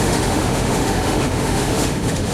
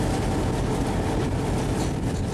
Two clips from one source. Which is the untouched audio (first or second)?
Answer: second